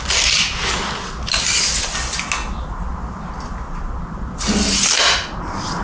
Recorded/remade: recorded